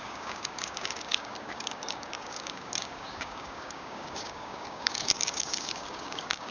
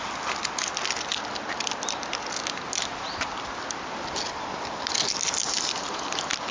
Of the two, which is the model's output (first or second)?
first